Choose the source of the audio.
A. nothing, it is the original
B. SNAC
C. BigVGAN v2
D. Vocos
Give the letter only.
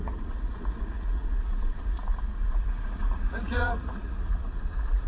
D